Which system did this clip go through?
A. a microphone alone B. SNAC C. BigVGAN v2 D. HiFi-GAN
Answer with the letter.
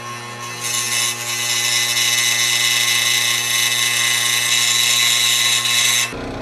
A